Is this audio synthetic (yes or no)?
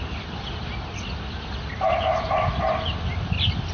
no